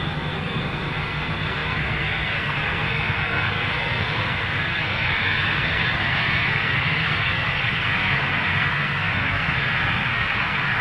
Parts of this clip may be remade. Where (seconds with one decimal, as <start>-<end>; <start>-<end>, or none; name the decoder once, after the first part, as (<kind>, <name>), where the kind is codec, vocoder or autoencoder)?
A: 0.0-10.8 (codec, SNAC)